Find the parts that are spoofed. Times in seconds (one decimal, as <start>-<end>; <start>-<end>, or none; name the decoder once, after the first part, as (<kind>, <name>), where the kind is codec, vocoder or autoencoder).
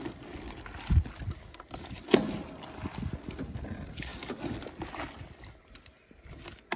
none